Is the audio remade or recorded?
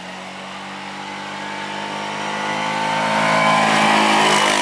recorded